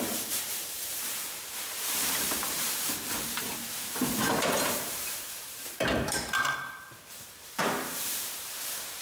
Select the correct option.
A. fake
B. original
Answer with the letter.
A